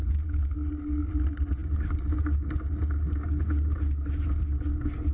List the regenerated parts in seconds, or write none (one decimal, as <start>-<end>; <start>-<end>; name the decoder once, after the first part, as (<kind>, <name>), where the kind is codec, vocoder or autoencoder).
none